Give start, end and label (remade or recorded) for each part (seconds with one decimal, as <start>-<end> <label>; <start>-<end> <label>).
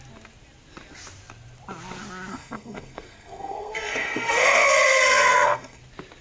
0.0-2.3 recorded; 2.3-5.8 remade; 5.8-6.2 recorded